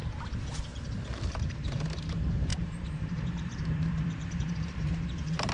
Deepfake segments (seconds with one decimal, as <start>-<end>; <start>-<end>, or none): 0.7-2.1; 2.5-5.5